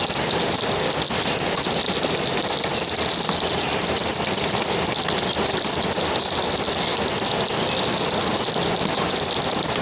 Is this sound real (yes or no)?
yes